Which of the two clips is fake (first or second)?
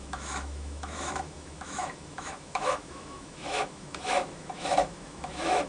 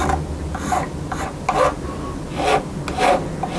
first